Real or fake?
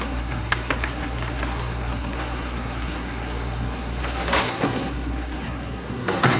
fake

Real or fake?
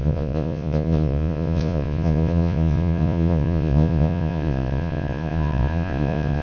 fake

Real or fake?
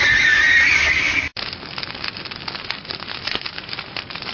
real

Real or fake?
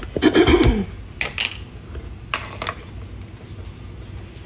real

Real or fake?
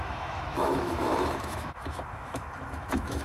fake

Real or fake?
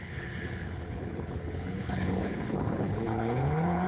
fake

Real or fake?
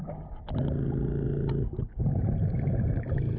real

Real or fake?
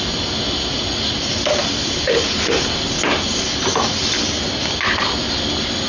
real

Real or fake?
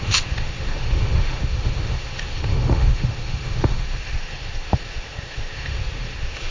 fake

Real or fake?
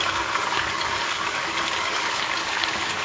fake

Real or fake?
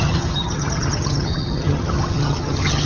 fake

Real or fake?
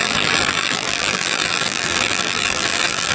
fake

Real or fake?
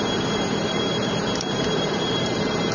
fake